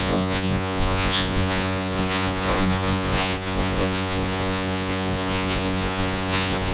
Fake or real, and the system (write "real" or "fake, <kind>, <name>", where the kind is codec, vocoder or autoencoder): fake, vocoder, Vocos